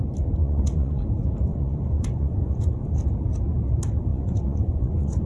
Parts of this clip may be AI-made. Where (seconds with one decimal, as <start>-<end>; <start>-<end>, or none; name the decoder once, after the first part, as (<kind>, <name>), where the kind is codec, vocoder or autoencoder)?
0.4-1.0 (vocoder, Vocos); 1.5-3.0; 4.1-5.3